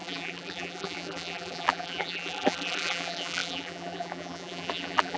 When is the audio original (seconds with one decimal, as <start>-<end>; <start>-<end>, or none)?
none